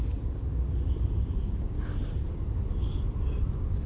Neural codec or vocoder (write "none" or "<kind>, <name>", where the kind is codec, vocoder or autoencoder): none